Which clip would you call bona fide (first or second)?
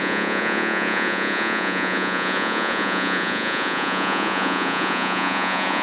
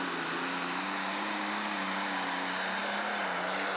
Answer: second